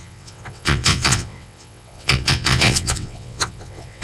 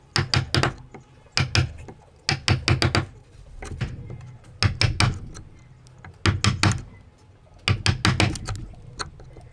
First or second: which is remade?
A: first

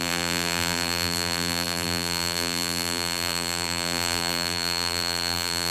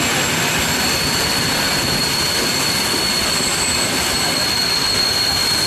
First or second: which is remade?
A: first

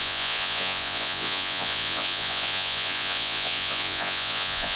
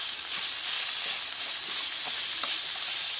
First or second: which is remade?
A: first